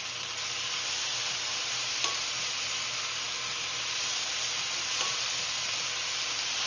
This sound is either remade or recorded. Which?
recorded